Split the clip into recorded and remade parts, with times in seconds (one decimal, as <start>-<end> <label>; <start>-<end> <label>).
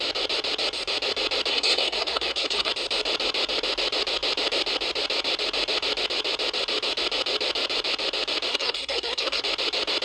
0.0-1.5 recorded; 1.5-2.7 remade; 2.7-8.5 recorded; 8.5-9.4 remade; 9.4-10.0 recorded